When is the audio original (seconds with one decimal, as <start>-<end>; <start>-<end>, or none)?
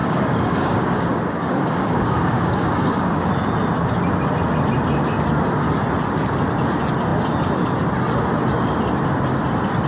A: 3.3-9.9